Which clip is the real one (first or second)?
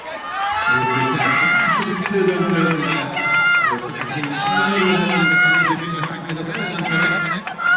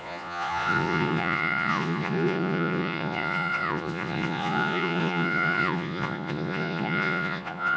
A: first